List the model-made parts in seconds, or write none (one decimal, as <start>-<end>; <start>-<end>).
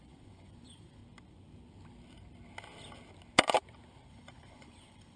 0.0-1.0; 4.1-5.2